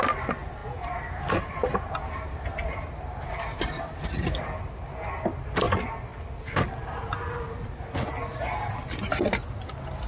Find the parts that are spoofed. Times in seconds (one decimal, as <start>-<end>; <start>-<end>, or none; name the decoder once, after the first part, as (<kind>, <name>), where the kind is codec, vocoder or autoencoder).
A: none